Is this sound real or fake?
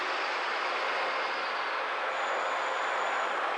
real